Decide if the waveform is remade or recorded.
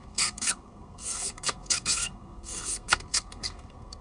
remade